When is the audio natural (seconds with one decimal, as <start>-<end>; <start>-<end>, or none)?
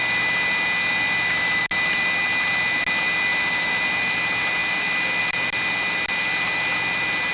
0.0-7.3